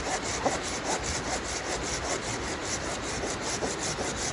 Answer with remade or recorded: recorded